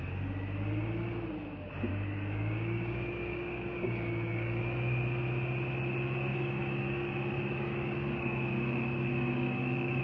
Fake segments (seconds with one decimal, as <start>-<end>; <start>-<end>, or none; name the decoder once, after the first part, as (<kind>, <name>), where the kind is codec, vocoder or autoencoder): 1.9-4.6 (codec, DAC); 6.3-10.0